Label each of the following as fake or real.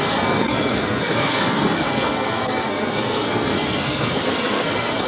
fake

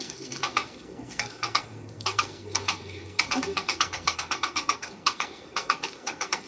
fake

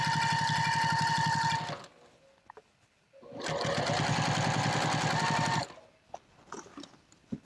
real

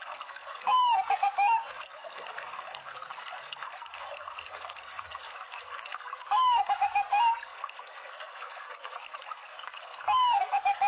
fake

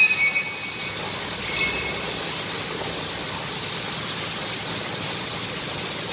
real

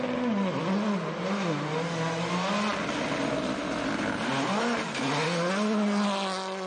real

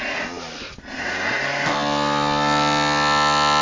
real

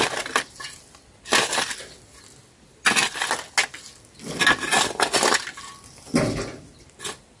real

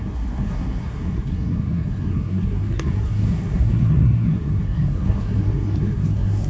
fake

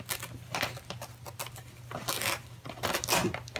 real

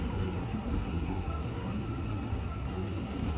fake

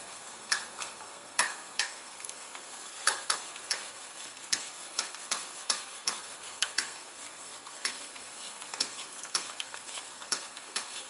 fake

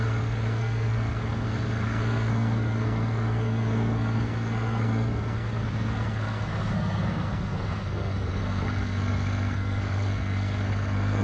fake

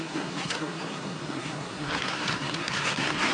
fake